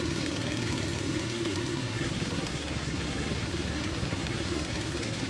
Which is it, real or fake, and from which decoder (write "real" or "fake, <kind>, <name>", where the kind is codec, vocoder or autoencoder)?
fake, codec, SNAC